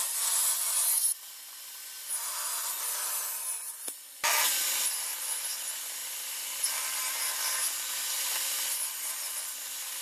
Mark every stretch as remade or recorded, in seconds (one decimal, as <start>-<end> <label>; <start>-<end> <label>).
0.0-6.0 recorded; 6.0-10.0 remade